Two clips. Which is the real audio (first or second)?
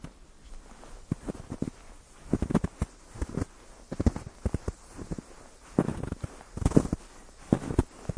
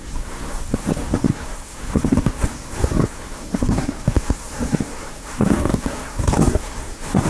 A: first